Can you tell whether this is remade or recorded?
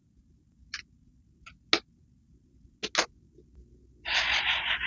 recorded